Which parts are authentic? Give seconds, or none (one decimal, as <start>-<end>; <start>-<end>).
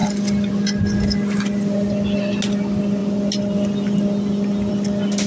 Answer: 0.0-5.3